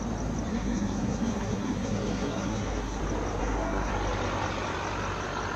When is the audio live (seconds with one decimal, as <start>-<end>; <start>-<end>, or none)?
0.0-0.5; 3.0-3.4; 3.9-5.6